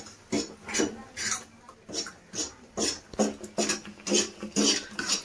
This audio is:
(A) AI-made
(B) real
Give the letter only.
B